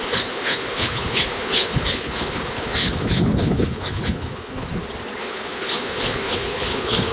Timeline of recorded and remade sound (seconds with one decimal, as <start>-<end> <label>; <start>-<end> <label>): 0.0-4.7 remade; 4.7-5.2 recorded; 5.2-7.1 remade